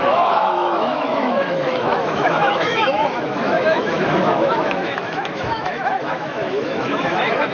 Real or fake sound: fake